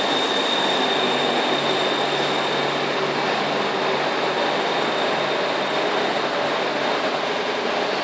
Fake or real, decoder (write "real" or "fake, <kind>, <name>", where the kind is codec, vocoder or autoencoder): real